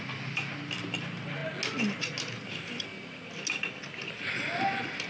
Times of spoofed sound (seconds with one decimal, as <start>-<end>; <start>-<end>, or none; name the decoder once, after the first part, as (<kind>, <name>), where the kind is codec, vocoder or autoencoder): none